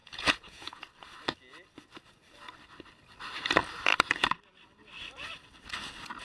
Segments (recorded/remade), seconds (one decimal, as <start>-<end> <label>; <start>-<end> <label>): 0.0-0.8 remade; 0.8-6.2 recorded